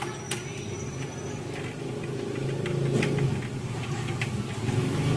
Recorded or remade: recorded